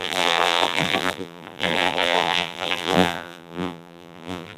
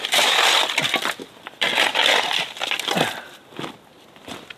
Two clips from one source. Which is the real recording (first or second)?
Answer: second